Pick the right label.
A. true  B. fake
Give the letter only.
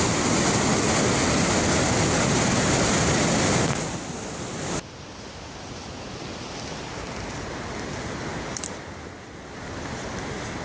A